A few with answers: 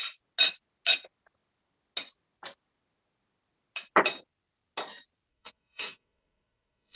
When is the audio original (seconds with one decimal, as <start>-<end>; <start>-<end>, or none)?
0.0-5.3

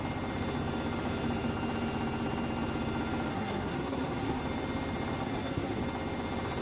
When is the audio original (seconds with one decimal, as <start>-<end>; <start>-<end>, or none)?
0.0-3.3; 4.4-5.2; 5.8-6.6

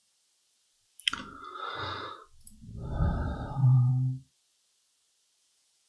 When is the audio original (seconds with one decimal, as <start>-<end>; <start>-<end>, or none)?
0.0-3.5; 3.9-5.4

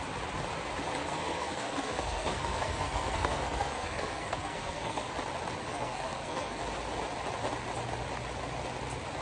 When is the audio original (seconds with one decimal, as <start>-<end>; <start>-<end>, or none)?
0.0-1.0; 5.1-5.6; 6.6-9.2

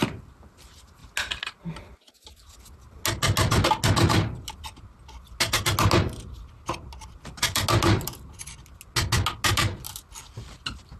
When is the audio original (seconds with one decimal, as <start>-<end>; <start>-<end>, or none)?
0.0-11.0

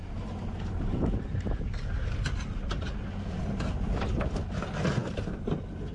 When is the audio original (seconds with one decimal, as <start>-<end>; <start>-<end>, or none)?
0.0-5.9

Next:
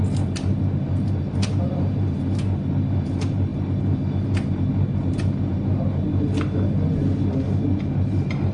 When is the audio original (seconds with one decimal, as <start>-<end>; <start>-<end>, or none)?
0.0-8.5